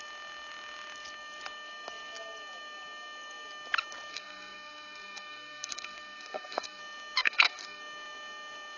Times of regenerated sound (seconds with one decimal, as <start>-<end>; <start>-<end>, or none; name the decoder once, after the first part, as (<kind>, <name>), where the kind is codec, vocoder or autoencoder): 4.1-6.8 (codec, SNAC); 7.2-7.8